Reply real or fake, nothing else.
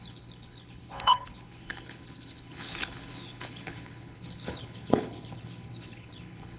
fake